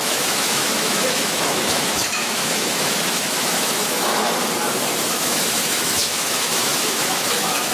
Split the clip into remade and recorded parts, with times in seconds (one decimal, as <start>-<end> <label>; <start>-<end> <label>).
0.0-4.1 remade; 4.1-5.1 recorded; 5.1-7.7 remade